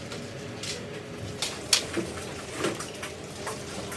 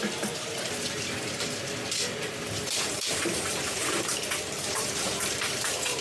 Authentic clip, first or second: first